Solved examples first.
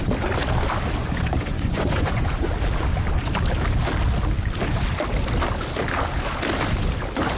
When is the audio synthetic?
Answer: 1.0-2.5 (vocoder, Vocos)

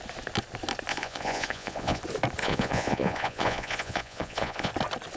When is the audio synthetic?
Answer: 0.9-2.0 (vocoder, Vocos); 2.4-4.7

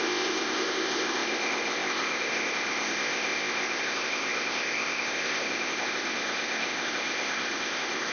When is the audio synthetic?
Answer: 0.0-8.1 (codec, ZipCodec)

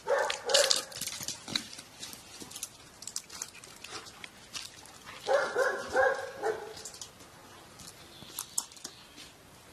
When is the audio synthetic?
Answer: none

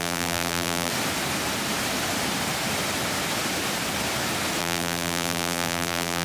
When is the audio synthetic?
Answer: 0.0-0.9 (vocoder, BigVGAN v2); 4.6-6.2